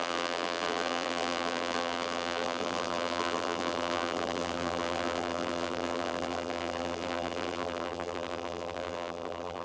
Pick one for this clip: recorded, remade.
remade